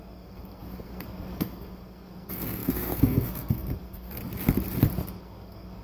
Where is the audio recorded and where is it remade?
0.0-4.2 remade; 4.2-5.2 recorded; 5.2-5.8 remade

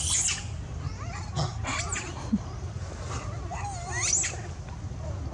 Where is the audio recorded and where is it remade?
0.0-5.3 recorded

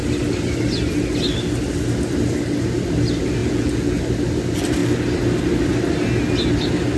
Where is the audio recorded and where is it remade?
0.0-3.4 recorded; 3.4-4.0 remade; 4.0-7.0 recorded

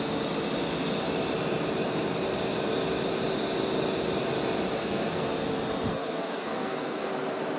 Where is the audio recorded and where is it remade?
0.0-4.8 recorded; 4.8-5.3 remade; 5.3-5.9 recorded; 5.9-7.1 remade; 7.1-7.6 recorded

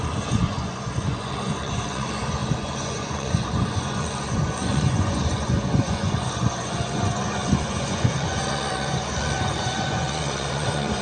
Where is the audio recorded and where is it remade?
0.0-11.0 remade

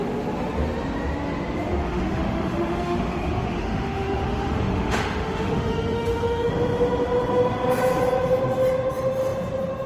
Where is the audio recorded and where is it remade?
0.0-1.8 recorded; 1.8-6.5 remade; 6.5-9.9 recorded

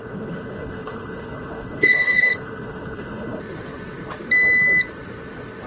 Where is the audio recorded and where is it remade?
0.0-3.4 remade; 3.4-5.7 recorded

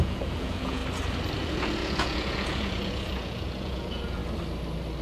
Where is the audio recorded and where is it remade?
0.0-0.8 remade; 0.8-1.4 recorded; 1.4-4.2 remade; 4.2-5.0 recorded